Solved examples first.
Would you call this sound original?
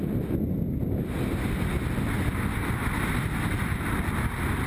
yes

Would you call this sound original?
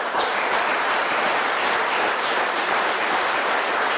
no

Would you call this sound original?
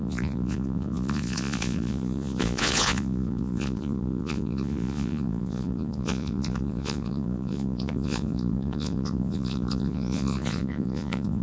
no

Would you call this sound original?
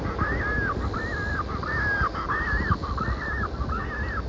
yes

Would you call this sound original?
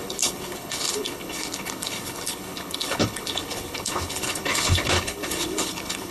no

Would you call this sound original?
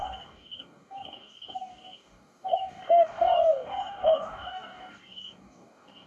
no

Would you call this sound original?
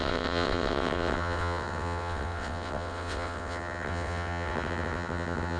no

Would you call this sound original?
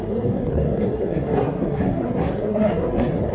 no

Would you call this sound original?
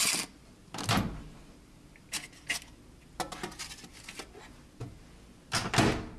yes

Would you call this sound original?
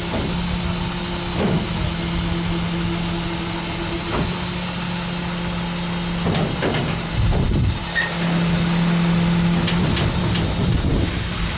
yes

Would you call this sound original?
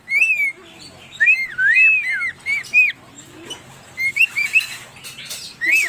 yes